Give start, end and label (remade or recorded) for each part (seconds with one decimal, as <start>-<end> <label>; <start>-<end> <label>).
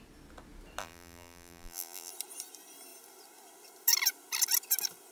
0.0-0.8 recorded; 0.8-2.1 remade; 2.1-5.1 recorded